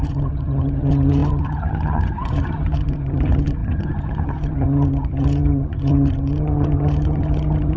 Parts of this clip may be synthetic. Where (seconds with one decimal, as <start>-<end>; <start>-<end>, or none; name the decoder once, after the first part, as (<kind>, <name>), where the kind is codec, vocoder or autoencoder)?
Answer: 0.0-7.8 (vocoder, HiFi-GAN)